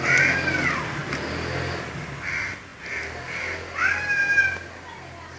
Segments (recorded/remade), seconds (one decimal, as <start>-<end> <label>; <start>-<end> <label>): 0.0-5.4 recorded